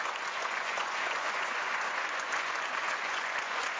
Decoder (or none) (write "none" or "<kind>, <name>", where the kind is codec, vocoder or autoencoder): vocoder, Vocos